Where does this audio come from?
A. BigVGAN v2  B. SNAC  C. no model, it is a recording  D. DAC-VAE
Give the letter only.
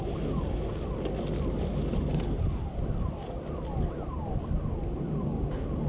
C